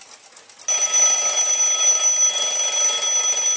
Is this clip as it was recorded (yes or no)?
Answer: yes